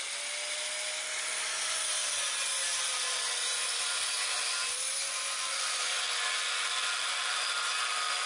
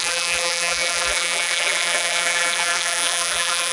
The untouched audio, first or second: first